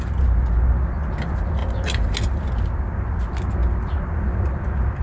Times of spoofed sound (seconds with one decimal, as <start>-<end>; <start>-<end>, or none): none